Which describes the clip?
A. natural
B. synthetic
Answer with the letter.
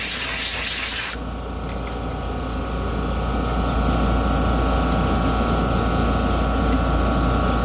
A